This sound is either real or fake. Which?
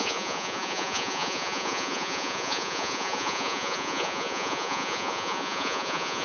fake